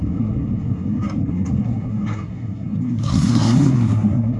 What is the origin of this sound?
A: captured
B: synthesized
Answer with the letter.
B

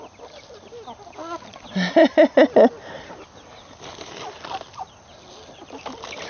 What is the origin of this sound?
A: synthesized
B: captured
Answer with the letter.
B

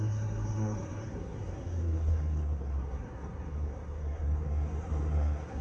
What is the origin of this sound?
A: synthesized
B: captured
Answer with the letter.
A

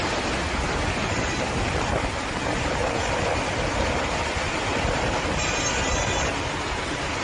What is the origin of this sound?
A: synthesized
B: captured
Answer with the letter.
B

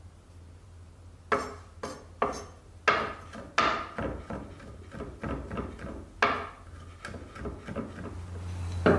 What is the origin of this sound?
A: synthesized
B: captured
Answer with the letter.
B